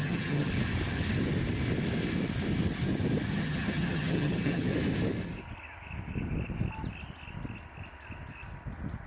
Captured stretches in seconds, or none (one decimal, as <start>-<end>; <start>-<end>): 0.5-3.3; 4.7-9.1